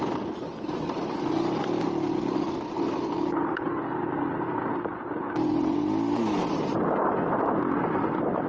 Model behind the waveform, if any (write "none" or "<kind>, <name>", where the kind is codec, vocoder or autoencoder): none